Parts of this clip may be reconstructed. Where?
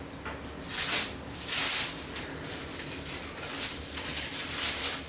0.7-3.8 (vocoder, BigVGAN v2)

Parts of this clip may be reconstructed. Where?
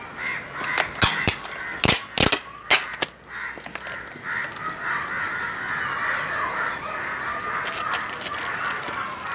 1.1-1.6 (vocoder, BigVGAN v2)